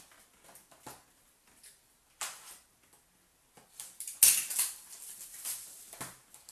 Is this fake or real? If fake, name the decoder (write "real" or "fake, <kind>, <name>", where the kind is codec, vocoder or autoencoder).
real